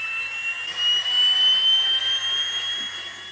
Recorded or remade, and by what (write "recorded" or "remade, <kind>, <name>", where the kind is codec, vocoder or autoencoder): recorded